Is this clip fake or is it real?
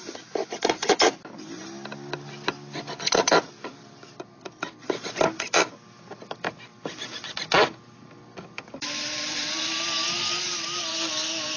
real